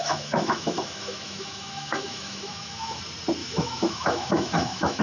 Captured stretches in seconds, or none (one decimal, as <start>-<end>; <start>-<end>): 3.0-3.4